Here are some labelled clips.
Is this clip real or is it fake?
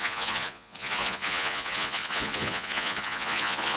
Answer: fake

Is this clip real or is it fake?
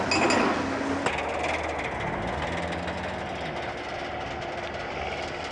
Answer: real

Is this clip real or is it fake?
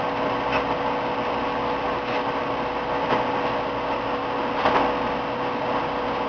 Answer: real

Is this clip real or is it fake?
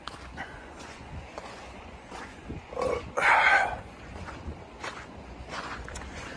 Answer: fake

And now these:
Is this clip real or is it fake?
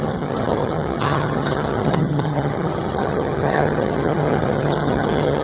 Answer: fake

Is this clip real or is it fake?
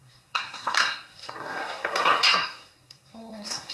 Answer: fake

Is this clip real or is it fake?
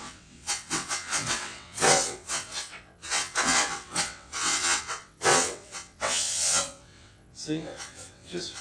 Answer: fake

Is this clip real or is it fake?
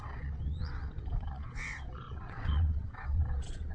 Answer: fake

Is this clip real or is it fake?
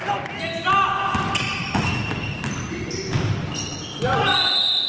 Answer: real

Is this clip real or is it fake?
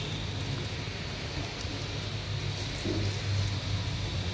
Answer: real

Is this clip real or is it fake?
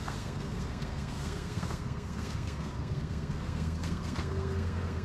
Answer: fake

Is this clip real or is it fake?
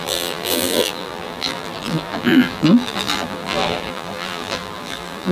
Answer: fake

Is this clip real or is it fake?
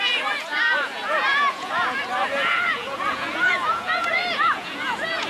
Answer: fake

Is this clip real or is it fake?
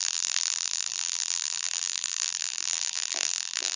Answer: fake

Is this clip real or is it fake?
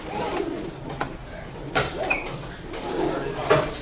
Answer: real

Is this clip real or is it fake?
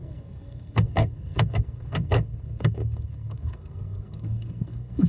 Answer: fake